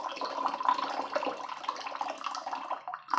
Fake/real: real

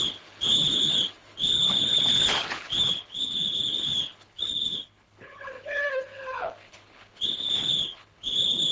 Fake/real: fake